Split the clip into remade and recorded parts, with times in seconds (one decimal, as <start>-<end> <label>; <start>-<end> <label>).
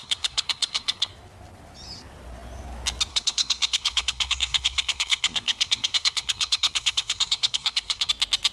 0.0-1.1 remade; 1.1-3.1 recorded; 3.1-8.1 remade; 8.1-8.5 recorded